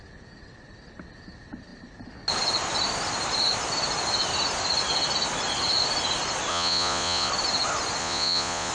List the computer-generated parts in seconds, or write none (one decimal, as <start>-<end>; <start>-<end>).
6.5-7.3; 8.0-8.7